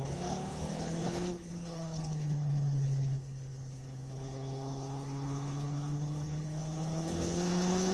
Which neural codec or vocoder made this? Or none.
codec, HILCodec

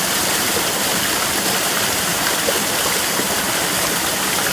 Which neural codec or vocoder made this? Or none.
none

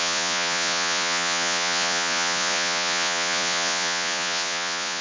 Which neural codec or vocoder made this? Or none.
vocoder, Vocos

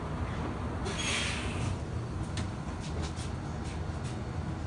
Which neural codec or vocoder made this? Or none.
none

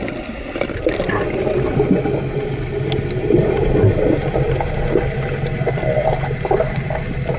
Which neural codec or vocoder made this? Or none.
none